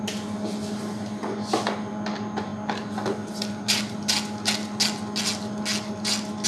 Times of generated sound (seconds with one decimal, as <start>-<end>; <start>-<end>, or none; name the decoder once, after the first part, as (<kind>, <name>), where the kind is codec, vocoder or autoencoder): none